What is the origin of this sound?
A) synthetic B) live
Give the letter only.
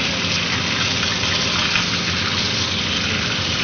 B